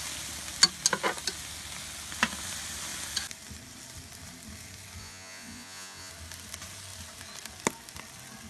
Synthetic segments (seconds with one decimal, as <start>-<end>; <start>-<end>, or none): 5.0-6.1